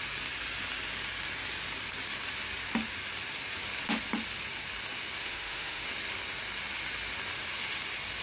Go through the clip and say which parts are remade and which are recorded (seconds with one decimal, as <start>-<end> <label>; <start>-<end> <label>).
0.0-5.2 recorded; 5.2-5.9 remade; 5.9-8.2 recorded